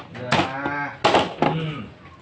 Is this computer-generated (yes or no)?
no